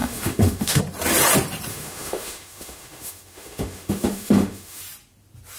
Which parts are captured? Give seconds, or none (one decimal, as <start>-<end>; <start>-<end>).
0.8-1.7; 4.8-5.6